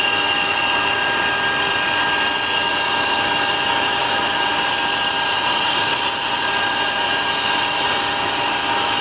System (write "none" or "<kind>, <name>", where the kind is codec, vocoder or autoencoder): none